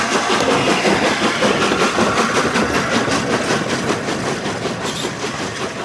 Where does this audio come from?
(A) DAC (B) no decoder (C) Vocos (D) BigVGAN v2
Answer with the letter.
B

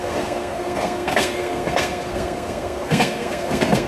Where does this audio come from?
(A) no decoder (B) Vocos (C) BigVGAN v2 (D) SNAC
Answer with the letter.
D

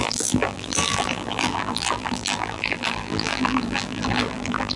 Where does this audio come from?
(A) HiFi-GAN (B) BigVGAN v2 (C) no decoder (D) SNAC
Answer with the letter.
B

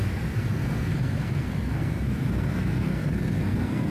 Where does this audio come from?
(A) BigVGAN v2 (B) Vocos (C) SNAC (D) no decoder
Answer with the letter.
C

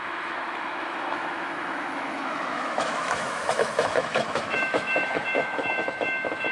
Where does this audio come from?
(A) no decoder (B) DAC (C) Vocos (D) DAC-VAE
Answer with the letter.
D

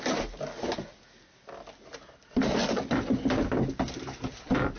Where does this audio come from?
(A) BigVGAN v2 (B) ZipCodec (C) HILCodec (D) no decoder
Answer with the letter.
D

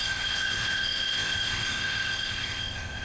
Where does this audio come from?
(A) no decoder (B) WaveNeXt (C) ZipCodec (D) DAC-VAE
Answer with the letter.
C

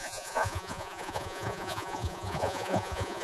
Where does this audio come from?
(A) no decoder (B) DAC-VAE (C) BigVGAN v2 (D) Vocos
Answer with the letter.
D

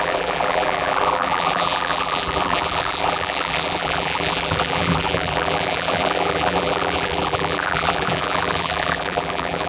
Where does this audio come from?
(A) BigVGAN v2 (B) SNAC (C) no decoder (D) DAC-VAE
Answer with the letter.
A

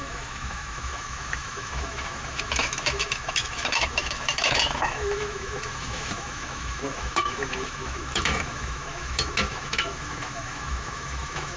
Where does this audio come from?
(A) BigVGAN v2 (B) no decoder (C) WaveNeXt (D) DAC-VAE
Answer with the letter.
D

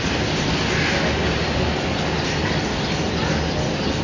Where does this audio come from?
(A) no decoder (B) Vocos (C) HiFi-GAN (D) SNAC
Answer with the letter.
A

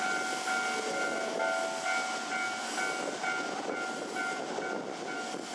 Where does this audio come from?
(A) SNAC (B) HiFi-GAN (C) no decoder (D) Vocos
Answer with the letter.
C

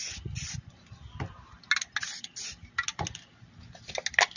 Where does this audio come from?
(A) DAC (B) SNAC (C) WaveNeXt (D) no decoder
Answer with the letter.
D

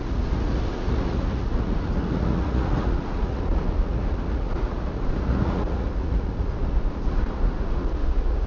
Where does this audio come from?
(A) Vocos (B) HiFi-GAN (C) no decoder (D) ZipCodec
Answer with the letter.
A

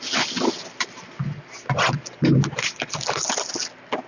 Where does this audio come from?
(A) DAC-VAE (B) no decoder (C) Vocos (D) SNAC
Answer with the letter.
B